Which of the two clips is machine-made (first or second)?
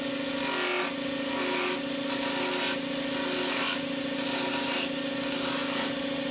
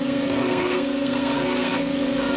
second